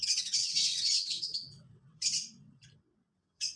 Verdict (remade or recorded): remade